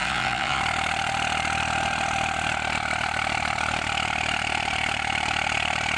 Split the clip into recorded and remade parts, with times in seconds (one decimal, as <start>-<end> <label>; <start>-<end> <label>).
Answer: 0.0-0.6 remade; 0.6-6.0 recorded